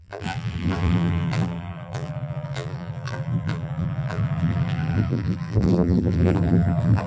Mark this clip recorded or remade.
remade